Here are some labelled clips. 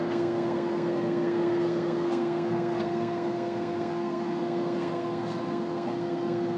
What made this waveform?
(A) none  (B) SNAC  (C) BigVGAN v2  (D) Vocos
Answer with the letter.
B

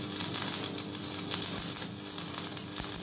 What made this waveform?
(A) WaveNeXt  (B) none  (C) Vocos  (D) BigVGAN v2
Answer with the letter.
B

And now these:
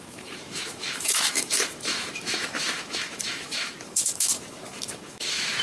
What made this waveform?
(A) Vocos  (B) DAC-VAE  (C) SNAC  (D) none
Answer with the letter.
B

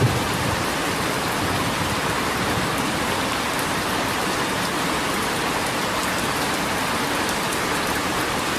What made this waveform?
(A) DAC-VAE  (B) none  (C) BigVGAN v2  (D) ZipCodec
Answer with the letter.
C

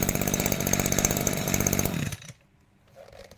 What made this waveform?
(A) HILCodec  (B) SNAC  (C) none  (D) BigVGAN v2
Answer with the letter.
D